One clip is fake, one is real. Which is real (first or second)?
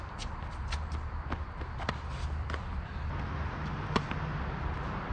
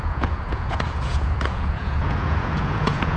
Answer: first